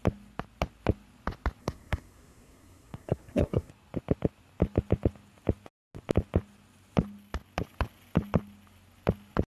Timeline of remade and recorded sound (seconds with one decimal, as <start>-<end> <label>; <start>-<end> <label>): 0.0-1.6 recorded; 1.6-3.7 remade; 3.7-9.5 recorded